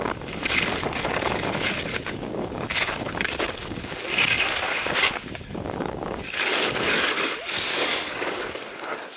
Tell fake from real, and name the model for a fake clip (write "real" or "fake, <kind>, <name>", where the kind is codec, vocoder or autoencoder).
fake, codec, DAC